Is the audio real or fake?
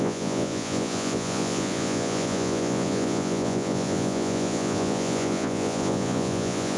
fake